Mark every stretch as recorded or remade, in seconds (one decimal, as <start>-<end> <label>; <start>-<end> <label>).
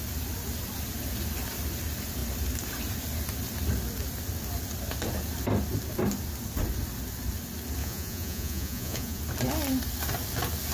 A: 0.0-7.8 recorded; 7.8-9.2 remade; 9.2-10.7 recorded